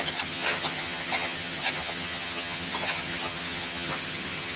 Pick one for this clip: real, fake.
fake